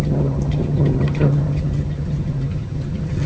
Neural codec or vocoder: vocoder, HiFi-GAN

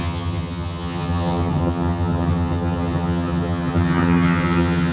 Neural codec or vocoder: vocoder, HiFi-GAN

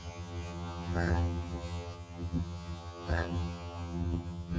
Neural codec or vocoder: vocoder, HiFi-GAN